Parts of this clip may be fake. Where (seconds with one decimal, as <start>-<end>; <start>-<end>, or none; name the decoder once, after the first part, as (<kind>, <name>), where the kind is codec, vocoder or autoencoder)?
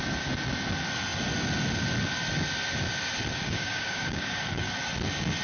3.3-4.7 (codec, DAC)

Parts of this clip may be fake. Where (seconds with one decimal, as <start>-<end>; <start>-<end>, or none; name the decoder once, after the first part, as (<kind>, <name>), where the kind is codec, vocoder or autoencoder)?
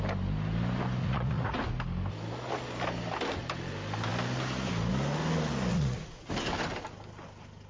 1.0-1.6 (vocoder, Vocos); 5.7-6.3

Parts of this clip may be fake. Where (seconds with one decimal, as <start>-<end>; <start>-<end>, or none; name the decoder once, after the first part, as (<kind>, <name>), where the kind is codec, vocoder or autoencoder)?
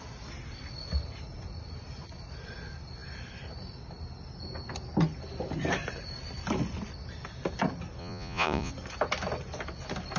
8.0-8.7 (vocoder, Vocos)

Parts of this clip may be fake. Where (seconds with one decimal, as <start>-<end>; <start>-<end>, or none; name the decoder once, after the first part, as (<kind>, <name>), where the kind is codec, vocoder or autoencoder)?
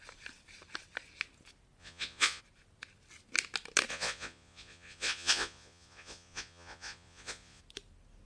1.8-2.4 (vocoder, Vocos); 3.9-7.6